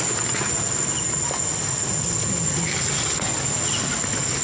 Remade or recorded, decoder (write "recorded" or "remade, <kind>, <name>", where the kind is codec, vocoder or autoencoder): recorded